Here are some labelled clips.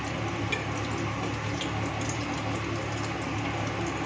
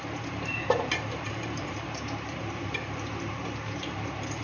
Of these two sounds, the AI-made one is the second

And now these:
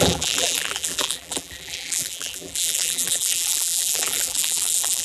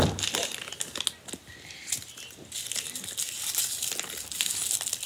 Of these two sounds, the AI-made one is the first